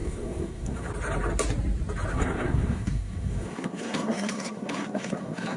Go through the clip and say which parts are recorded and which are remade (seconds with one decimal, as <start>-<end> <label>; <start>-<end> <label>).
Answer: 0.0-0.9 remade; 0.9-2.1 recorded; 2.1-5.6 remade